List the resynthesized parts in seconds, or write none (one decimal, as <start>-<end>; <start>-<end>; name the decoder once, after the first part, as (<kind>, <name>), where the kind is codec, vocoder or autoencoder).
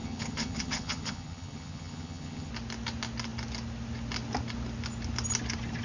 0.0-2.5 (vocoder, HiFi-GAN)